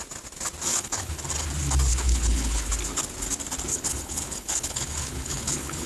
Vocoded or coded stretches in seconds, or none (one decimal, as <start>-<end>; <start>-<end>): 0.7-1.2; 1.9-2.7; 3.7-5.9